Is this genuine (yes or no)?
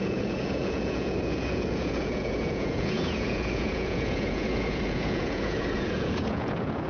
no